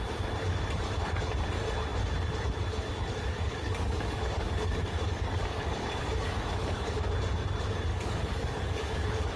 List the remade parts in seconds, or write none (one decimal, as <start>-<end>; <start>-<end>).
3.3-7.1; 7.9-9.4